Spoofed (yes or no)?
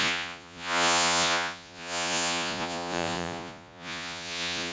yes